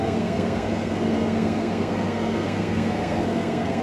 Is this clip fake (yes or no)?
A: yes